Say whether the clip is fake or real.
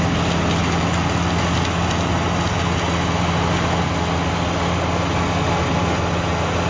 real